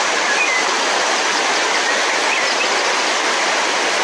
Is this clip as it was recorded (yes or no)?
yes